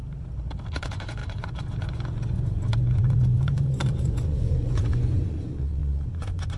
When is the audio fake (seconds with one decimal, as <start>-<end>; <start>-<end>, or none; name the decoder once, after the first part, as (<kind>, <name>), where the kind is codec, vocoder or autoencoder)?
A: 0.7-6.6 (vocoder, Vocos)